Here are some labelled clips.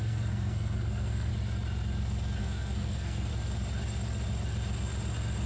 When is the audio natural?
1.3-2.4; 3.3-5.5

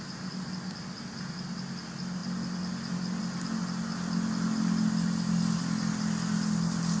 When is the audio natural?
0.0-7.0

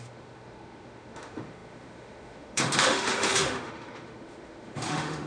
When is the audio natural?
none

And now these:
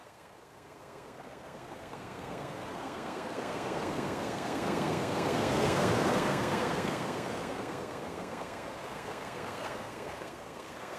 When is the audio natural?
none

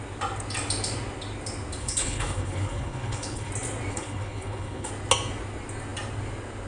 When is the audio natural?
0.0-1.8; 3.5-3.9; 4.9-6.7